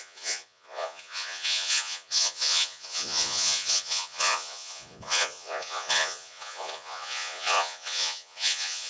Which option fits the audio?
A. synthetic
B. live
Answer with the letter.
A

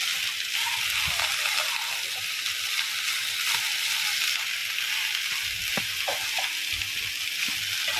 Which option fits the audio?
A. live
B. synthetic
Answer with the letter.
A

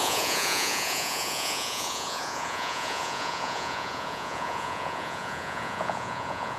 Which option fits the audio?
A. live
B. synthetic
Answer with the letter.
B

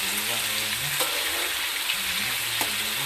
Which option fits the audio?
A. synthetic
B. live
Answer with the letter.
B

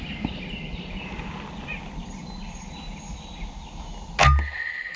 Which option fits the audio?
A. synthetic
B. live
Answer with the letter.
B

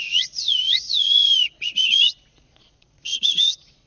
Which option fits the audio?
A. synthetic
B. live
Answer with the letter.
A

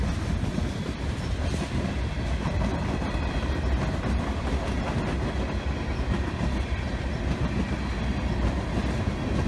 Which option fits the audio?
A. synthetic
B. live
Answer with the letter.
B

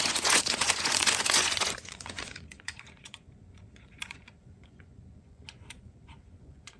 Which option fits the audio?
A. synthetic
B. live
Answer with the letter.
A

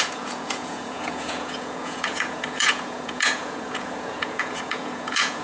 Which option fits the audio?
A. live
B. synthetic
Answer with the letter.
B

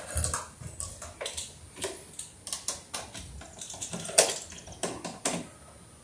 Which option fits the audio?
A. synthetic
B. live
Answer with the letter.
B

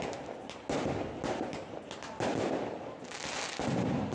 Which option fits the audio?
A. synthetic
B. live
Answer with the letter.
B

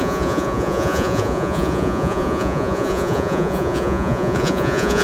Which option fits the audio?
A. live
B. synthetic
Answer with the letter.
B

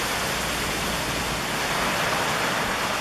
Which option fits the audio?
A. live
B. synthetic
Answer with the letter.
A